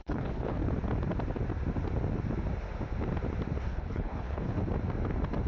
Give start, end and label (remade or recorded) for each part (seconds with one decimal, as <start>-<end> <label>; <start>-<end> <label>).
0.0-0.6 remade; 0.6-3.6 recorded; 3.6-4.6 remade; 4.6-5.5 recorded

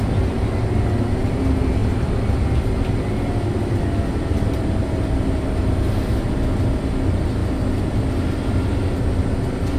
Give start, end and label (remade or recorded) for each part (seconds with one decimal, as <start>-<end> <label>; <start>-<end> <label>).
0.0-9.8 recorded

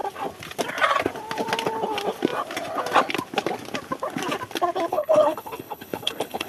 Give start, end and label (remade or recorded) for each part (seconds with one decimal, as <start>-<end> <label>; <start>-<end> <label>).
0.0-4.9 recorded; 4.9-6.5 remade

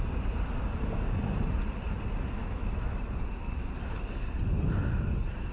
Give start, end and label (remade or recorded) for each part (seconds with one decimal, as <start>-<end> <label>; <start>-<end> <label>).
0.0-2.4 recorded; 2.4-3.0 remade; 3.0-5.5 recorded

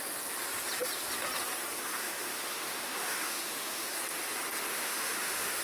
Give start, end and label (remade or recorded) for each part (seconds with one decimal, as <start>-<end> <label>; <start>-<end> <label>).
0.0-1.9 recorded; 1.9-4.0 remade; 4.0-4.7 recorded; 4.7-5.6 remade